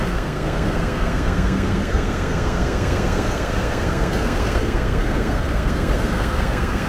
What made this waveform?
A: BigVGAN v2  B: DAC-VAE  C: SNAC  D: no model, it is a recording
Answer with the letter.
C